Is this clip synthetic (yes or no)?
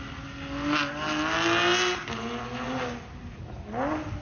no